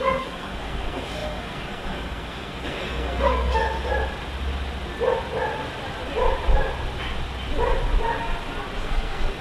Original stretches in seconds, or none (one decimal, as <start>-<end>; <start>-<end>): 3.6-8.8